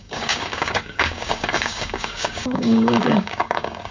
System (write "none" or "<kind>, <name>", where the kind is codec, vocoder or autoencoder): codec, DAC